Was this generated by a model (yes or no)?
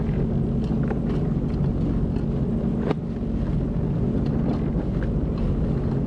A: no